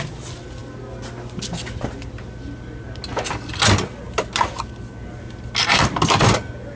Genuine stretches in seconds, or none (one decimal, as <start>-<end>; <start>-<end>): 0.0-6.8